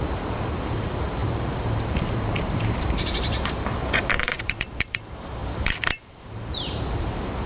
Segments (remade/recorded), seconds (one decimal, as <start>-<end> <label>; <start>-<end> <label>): 0.0-7.5 remade